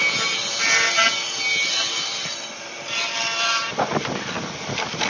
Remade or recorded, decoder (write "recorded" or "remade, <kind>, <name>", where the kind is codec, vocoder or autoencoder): remade, vocoder, BigVGAN v2